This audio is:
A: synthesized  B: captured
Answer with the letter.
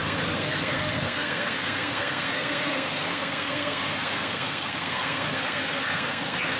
A